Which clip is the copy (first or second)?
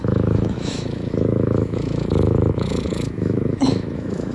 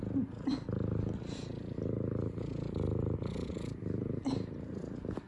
first